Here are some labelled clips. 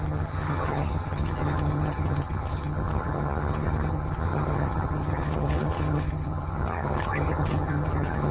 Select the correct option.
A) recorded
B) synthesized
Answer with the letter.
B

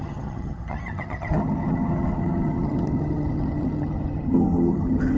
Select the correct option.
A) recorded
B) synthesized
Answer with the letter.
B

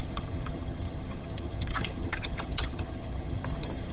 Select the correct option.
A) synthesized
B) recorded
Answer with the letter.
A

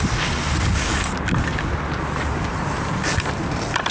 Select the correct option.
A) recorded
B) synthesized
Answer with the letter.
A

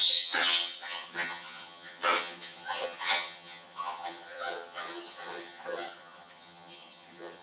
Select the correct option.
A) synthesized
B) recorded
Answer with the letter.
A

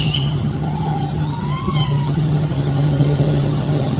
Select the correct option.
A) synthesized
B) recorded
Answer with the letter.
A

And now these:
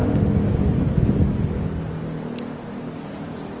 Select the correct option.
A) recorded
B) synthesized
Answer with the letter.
A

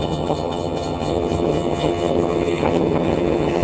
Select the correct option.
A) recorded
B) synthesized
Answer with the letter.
B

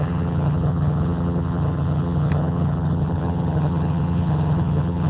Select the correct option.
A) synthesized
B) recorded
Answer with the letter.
A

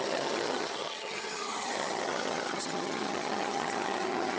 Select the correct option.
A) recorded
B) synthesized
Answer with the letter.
B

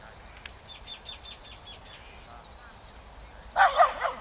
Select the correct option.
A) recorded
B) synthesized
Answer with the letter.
A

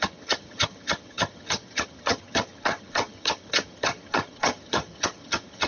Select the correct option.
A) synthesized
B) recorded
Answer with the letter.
A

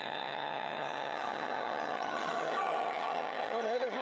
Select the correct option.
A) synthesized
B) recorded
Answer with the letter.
A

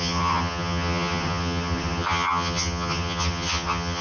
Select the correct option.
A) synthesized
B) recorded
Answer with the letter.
A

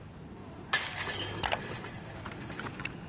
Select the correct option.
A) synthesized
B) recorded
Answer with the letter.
B